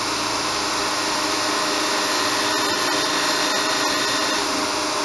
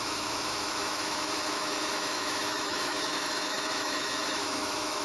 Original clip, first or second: first